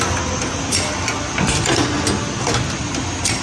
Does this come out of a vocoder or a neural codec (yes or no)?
no